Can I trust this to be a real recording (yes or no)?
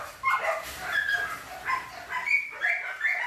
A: yes